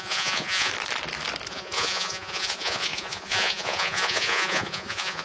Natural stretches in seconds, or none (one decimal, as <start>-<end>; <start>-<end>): 0.7-1.5

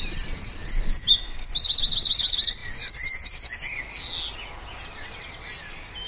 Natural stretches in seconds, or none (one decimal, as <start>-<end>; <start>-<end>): 0.0-6.1